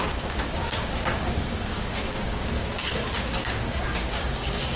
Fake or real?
fake